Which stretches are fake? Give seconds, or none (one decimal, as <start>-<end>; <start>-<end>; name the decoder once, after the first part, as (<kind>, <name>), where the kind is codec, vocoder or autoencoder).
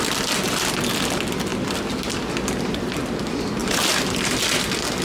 1.5-2.3 (vocoder, BigVGAN v2); 3.6-4.3